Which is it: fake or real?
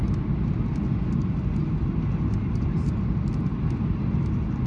real